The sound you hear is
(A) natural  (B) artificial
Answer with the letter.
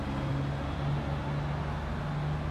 A